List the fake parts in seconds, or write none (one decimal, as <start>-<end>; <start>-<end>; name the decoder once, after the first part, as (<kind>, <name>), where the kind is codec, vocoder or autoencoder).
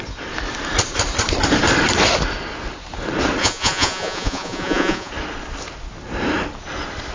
3.4-5.1 (vocoder, Vocos)